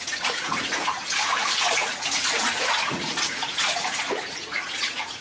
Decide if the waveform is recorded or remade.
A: remade